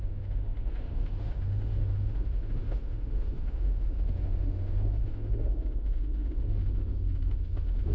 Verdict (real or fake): fake